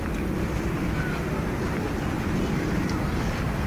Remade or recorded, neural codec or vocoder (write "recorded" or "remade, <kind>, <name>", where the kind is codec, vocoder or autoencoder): recorded